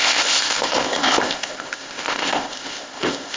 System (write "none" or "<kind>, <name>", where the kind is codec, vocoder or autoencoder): codec, ZipCodec